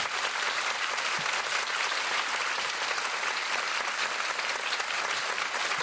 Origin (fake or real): real